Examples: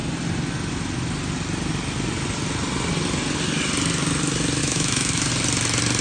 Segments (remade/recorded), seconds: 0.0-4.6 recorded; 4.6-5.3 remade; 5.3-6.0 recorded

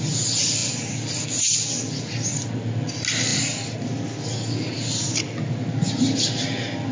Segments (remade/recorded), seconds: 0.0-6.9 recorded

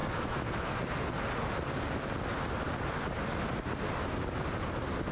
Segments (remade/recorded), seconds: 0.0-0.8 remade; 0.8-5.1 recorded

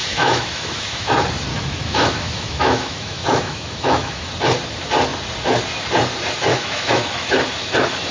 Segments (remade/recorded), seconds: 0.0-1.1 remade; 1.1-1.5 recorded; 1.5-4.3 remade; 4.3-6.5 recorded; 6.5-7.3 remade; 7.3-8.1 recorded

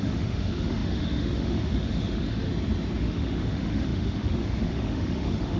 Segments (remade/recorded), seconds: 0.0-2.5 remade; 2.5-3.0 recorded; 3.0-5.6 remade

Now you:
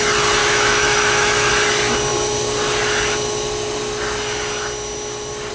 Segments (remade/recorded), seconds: 0.0-0.4 recorded; 0.4-1.5 remade; 1.5-5.5 recorded

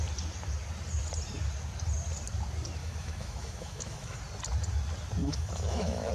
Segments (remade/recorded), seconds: 0.0-2.8 recorded; 2.8-4.2 remade; 4.2-5.2 recorded; 5.2-6.1 remade

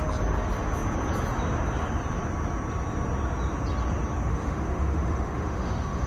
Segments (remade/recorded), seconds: 0.0-4.3 recorded; 4.3-6.1 remade